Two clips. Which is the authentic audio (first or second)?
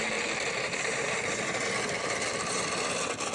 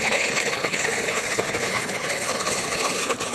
first